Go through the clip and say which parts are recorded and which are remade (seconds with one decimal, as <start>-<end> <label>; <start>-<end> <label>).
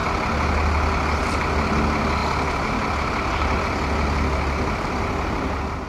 0.0-5.9 recorded